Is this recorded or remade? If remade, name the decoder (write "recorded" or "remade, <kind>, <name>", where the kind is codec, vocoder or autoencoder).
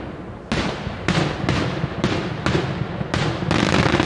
recorded